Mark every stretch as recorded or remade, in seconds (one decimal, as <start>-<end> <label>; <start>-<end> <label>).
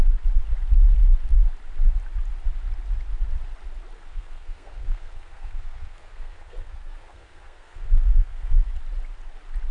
0.0-4.1 recorded; 4.1-8.7 remade; 8.7-9.7 recorded